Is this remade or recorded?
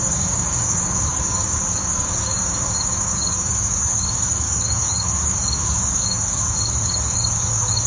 remade